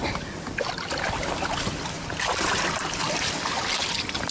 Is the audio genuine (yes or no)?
yes